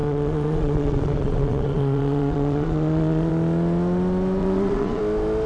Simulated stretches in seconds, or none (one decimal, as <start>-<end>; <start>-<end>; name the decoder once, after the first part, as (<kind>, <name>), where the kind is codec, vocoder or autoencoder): 0.0-3.3 (vocoder, Vocos); 4.4-5.0